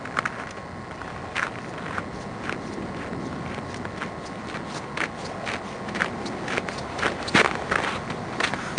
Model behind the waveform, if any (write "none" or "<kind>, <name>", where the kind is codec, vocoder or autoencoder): none